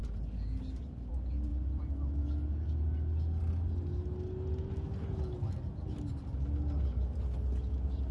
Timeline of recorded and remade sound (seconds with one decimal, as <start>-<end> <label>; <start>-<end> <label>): 0.0-8.1 recorded